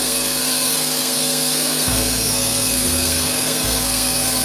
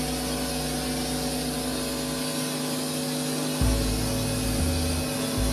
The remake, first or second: first